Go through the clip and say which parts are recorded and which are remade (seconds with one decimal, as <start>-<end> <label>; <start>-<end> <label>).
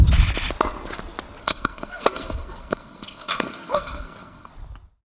0.0-1.4 recorded; 1.4-4.5 remade; 4.5-5.1 recorded